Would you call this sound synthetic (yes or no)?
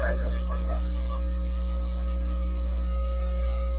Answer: yes